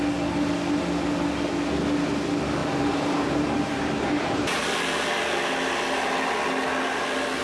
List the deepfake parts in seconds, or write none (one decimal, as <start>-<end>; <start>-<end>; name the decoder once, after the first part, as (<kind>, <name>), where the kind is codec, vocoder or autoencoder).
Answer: 2.6-4.6 (vocoder, BigVGAN v2)